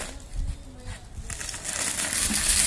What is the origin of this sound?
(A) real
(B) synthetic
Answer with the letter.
A